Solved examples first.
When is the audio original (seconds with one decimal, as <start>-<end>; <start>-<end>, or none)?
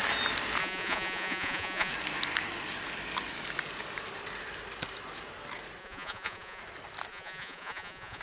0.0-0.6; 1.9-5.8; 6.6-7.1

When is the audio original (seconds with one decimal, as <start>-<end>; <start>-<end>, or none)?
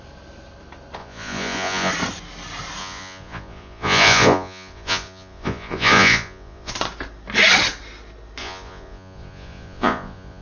0.0-1.0; 1.9-2.8; 6.7-8.4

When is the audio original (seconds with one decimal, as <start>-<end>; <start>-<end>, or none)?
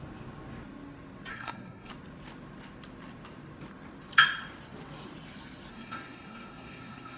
0.0-1.3; 1.9-5.7